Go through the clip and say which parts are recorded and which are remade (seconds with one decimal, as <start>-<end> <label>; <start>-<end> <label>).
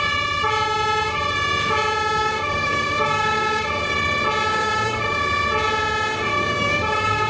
0.0-2.2 recorded; 2.2-3.7 remade; 3.7-4.5 recorded; 4.5-5.2 remade; 5.2-6.3 recorded; 6.3-7.3 remade